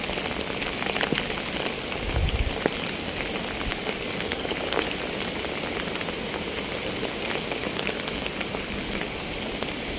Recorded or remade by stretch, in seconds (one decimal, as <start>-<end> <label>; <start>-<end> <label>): 0.0-3.7 recorded; 3.7-4.9 remade; 4.9-7.6 recorded; 7.6-9.3 remade; 9.3-10.0 recorded